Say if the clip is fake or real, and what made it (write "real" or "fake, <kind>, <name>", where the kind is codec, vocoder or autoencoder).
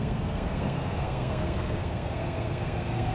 fake, codec, SNAC